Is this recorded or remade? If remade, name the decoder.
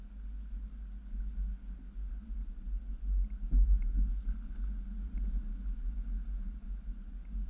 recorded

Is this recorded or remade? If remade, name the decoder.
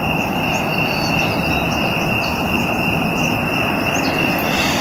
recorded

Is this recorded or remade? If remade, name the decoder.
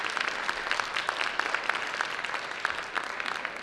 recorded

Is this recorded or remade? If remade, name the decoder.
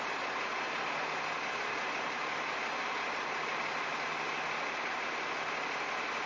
recorded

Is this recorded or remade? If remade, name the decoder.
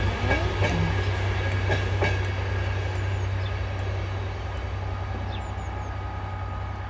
recorded